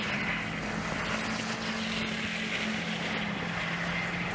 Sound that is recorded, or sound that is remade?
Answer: recorded